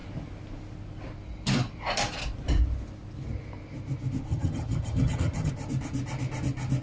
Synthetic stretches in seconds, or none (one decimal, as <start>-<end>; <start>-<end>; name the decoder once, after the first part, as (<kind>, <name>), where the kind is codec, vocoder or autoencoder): 4.3-5.5 (vocoder, HiFi-GAN)